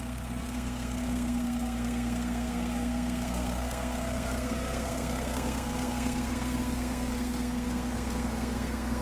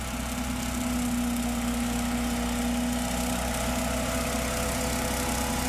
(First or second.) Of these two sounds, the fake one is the first